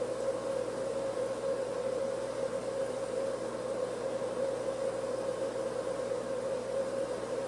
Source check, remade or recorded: recorded